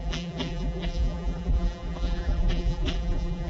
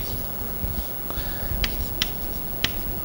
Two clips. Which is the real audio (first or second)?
second